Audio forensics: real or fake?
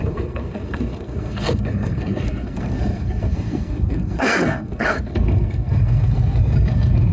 fake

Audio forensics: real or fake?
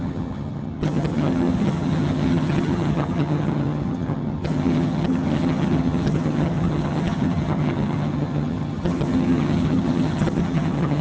fake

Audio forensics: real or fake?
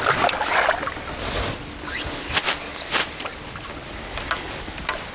real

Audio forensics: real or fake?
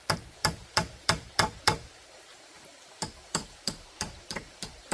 fake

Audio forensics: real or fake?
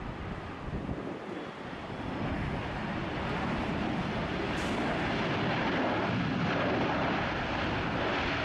real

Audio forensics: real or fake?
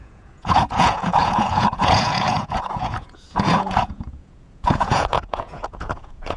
fake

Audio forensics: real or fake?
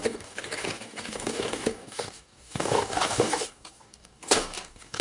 fake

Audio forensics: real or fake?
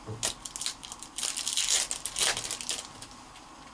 real